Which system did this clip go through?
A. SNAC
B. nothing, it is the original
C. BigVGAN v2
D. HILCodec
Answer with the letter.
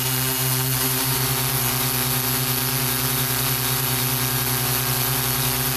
B